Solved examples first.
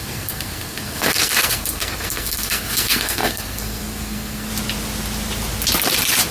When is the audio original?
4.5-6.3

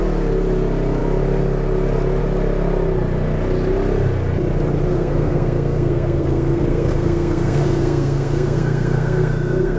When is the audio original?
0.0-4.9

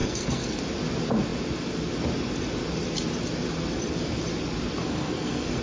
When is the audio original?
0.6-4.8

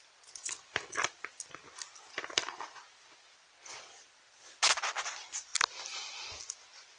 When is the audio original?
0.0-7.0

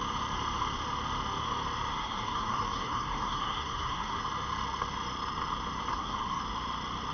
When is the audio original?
0.0-1.9; 4.2-5.9; 6.4-7.1

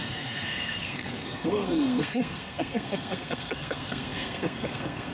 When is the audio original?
none

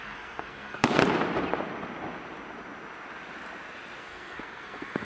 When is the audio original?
1.0-4.0